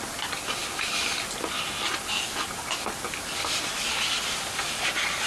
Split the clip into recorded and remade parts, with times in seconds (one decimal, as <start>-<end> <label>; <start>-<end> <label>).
0.0-5.3 recorded